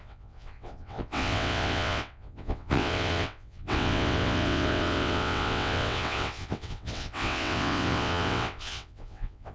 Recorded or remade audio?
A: remade